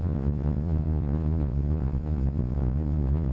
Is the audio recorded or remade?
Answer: remade